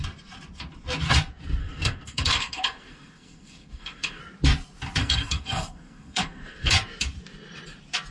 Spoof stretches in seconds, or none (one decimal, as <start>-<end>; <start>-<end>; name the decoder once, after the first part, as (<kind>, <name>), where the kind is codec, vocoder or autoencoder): 1.6-4.2 (codec, SNAC); 5.0-6.7